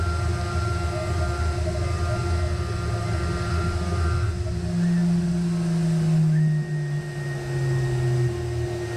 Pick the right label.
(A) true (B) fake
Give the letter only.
A